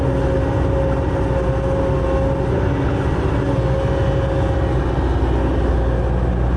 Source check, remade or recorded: recorded